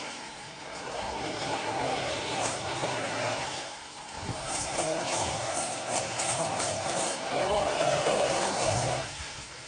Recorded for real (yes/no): no